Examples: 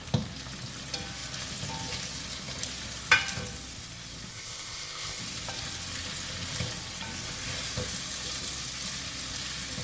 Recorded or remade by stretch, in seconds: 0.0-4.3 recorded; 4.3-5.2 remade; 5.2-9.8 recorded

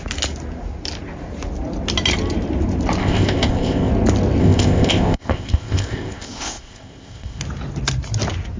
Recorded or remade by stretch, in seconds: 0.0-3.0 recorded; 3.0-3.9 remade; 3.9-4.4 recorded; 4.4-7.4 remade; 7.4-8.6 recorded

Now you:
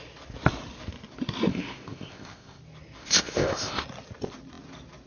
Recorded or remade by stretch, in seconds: 0.0-1.5 recorded; 1.5-2.6 remade; 2.6-3.0 recorded; 3.0-3.8 remade; 3.8-5.1 recorded